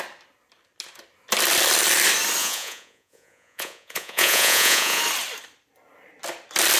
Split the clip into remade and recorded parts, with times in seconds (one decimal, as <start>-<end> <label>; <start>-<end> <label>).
0.0-2.4 recorded; 2.4-5.0 remade; 5.0-6.8 recorded